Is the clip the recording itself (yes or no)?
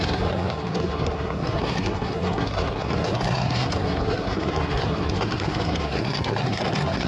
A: no